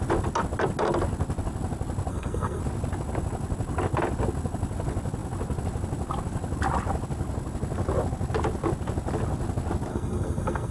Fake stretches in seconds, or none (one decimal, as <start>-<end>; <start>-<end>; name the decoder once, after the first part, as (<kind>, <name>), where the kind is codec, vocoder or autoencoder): 2.1-2.6 (codec, SNAC); 9.9-10.7